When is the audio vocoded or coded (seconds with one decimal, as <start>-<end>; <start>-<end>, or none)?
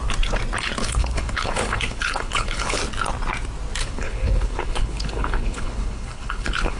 0.8-2.8; 3.8-6.8